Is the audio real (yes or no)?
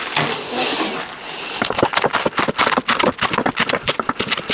yes